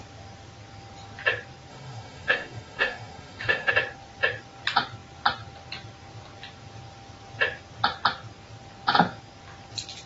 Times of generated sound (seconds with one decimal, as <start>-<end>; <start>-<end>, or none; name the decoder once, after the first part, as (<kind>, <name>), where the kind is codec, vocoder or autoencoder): 1.7-3.7 (autoencoder, DAC-VAE)